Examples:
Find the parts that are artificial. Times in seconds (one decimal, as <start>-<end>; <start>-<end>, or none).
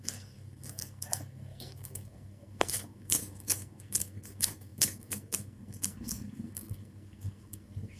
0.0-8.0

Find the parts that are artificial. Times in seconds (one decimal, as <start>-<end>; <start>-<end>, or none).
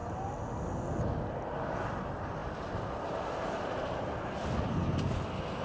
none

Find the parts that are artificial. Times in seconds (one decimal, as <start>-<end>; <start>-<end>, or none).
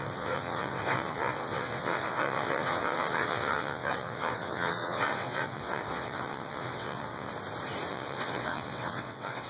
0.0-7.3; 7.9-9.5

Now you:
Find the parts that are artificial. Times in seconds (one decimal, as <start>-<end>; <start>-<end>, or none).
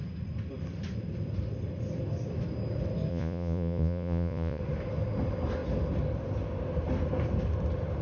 3.1-4.6